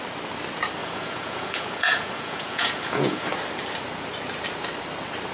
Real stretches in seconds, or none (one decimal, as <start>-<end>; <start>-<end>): 0.0-0.8; 3.3-5.3